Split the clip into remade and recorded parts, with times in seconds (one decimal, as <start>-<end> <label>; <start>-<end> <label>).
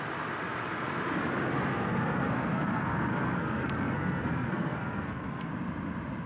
0.0-1.7 recorded; 1.7-5.5 remade; 5.5-6.3 recorded